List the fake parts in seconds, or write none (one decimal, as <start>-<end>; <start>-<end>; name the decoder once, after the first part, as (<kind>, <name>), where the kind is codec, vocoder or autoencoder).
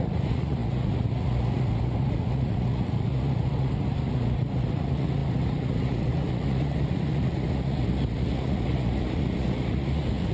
0.0-10.3 (vocoder, Vocos)